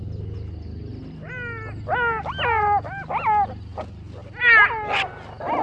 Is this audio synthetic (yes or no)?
no